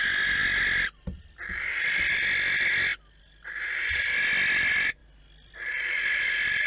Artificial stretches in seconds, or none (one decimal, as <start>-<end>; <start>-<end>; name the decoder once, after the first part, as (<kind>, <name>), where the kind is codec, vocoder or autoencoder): none